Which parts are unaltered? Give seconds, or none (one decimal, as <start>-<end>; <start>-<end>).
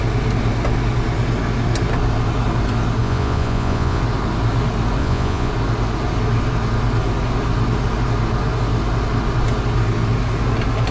0.0-3.0; 4.0-5.0; 5.5-10.9